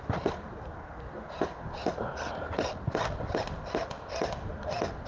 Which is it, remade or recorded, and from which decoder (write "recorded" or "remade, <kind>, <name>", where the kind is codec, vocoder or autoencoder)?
recorded